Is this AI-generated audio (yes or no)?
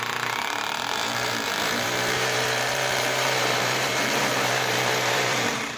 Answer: yes